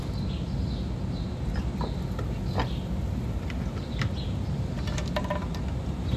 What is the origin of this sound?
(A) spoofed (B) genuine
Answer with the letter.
B